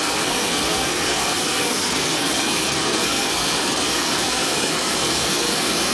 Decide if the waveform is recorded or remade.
remade